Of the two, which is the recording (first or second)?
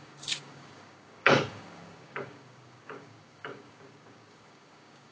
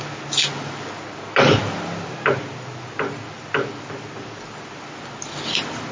second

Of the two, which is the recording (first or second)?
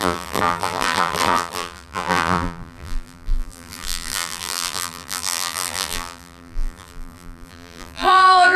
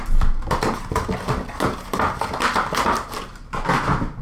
second